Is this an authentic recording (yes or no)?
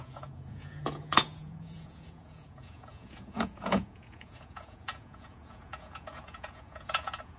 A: no